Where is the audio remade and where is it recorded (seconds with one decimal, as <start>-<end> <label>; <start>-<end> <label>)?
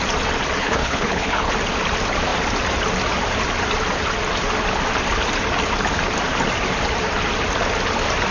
0.0-0.6 recorded; 0.6-1.5 remade; 1.5-8.3 recorded